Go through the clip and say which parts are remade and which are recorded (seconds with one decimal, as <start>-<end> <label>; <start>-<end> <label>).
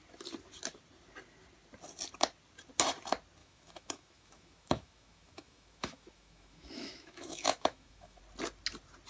0.0-3.4 recorded; 3.4-8.2 remade; 8.2-9.1 recorded